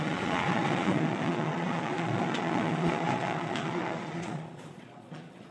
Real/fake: fake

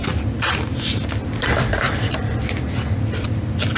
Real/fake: real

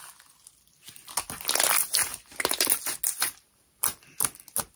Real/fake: real